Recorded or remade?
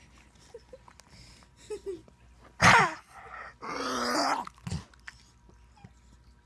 recorded